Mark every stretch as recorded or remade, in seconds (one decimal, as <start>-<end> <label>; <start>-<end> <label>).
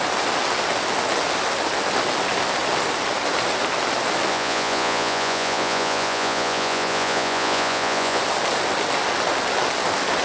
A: 0.0-4.3 recorded; 4.3-8.2 remade; 8.2-10.2 recorded